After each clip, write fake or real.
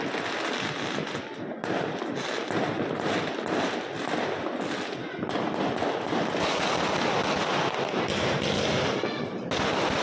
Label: real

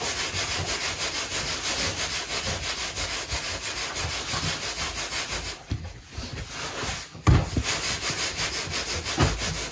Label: real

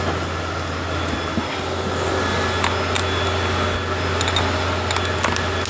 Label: real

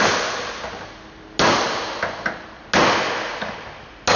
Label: real